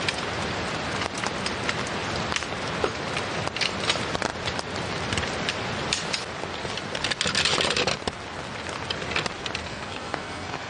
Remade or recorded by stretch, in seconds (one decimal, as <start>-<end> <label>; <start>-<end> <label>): 0.0-9.6 recorded; 9.6-10.7 remade